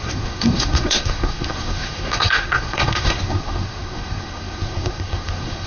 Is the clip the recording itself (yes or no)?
no